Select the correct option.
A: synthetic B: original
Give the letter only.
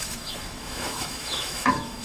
A